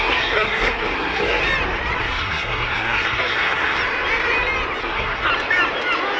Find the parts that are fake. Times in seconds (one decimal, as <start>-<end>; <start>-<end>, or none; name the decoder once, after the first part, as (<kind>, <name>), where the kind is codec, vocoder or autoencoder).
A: 0.0-1.4 (codec, SNAC); 2.0-3.8; 4.8-5.3